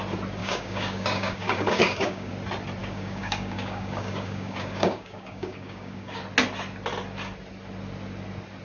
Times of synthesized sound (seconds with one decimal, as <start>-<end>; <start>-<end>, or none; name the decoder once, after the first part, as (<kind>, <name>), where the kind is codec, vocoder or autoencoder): 0.4-2.3 (codec, DAC); 2.8-6.2